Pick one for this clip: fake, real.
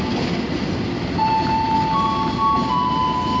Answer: real